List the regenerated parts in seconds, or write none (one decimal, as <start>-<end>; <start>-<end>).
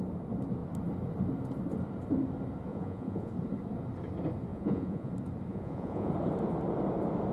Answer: 2.7-3.3; 4.5-5.1; 5.5-6.1